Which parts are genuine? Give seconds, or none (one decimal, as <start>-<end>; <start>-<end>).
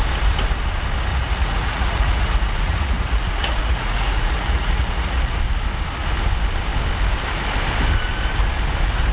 0.0-1.1; 5.4-9.1